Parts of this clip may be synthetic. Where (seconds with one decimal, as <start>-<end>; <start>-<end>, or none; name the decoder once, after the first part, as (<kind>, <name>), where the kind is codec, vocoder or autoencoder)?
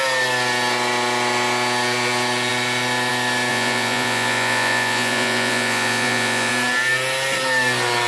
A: 3.5-6.5 (vocoder, Vocos)